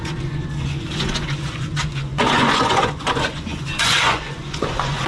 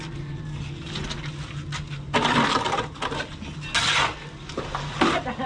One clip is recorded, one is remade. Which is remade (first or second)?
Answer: first